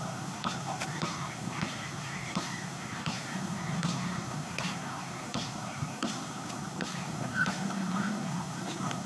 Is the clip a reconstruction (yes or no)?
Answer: yes